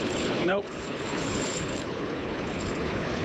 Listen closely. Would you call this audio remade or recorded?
remade